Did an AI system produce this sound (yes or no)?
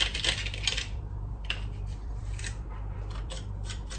yes